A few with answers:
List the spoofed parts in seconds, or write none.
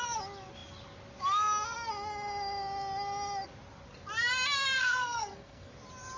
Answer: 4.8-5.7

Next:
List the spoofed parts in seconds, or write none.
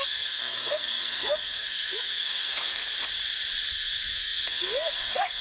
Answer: 0.0-2.8; 3.7-5.4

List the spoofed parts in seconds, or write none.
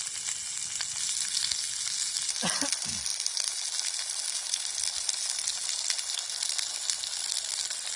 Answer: none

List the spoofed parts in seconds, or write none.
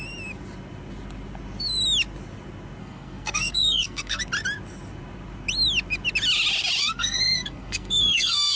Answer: 2.8-4.2; 6.8-8.6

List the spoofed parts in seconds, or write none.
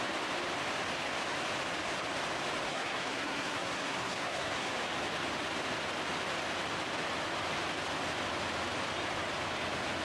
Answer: 2.7-4.7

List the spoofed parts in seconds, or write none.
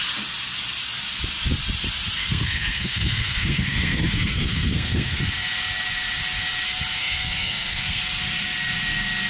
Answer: 2.2-5.2; 7.0-8.0